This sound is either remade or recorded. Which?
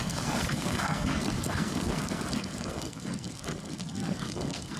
remade